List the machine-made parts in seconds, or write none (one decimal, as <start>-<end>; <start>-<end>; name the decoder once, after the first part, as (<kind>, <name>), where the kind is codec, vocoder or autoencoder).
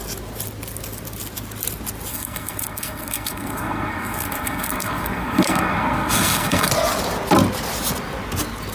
2.1-6.7 (codec, SNAC)